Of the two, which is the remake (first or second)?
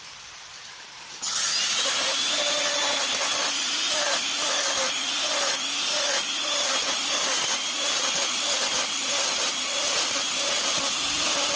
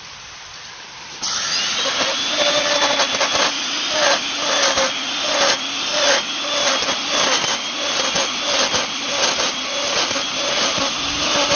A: first